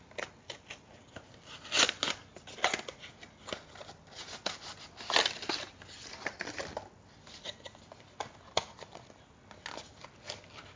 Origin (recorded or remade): recorded